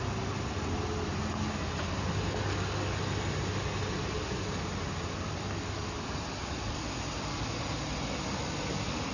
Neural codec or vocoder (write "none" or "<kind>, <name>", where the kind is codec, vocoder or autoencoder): none